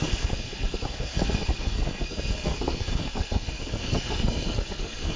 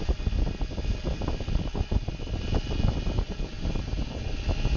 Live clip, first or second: second